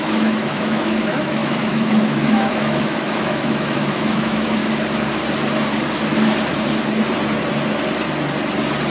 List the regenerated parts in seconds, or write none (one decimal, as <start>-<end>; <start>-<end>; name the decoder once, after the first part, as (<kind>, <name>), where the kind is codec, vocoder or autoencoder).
0.0-4.6 (autoencoder, DAC-VAE)